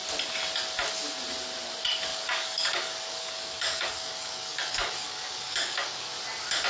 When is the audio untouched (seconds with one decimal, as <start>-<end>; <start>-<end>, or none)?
0.0-2.1; 6.1-6.7